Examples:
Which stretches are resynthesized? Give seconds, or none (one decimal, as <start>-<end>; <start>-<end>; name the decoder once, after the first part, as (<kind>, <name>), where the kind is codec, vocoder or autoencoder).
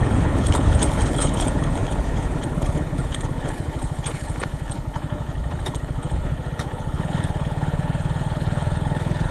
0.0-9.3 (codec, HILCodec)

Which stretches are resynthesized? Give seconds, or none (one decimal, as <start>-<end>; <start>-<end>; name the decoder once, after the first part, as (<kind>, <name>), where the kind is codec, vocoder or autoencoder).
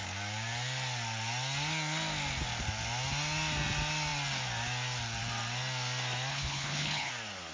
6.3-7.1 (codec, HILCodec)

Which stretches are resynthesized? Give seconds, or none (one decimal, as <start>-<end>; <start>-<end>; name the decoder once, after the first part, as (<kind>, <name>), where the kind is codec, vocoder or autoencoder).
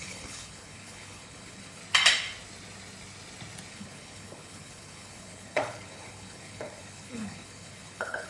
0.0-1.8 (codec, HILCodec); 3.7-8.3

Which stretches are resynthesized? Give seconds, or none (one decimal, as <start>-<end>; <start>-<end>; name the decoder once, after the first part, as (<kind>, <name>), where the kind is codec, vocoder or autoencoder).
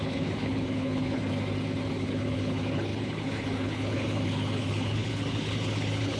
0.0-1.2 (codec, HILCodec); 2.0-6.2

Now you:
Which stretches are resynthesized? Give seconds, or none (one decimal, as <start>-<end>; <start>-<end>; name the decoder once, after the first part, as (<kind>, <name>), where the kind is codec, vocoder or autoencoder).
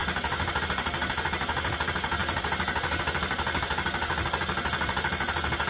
none